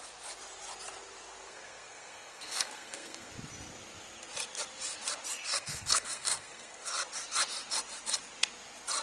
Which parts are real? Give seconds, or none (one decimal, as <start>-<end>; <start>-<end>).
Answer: 0.0-1.4; 3.3-5.5; 6.9-9.0